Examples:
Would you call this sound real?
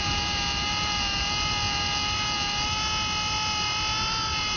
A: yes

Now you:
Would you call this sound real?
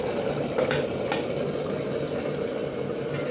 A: yes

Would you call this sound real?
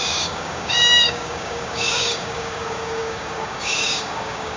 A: no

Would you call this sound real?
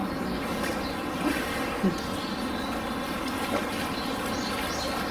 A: yes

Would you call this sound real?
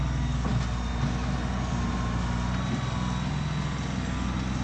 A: yes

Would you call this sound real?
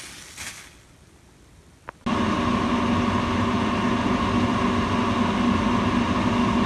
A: yes